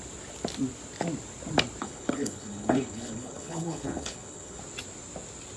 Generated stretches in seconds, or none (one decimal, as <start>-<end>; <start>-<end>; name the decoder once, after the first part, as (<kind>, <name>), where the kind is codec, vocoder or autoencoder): 1.8-4.6 (codec, HILCodec)